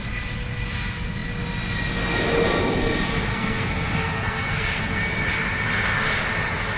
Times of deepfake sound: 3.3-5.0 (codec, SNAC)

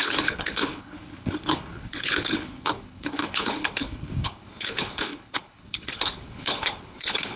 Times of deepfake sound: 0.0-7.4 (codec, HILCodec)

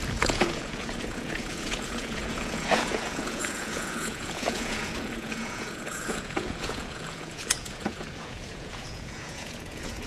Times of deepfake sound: 0.0-10.1 (vocoder, Vocos)

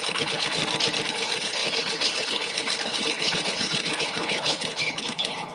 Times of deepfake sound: 0.0-0.6 (codec, HILCodec); 1.1-5.5

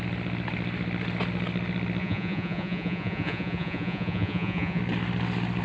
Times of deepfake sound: 2.0-4.8 (vocoder, Vocos)